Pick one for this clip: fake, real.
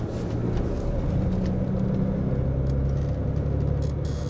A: real